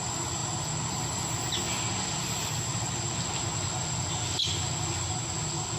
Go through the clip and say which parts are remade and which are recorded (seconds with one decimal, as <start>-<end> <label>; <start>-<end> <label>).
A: 0.0-5.8 recorded